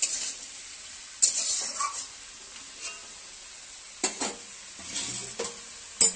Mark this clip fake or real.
real